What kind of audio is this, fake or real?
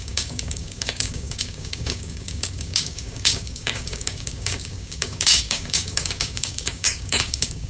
fake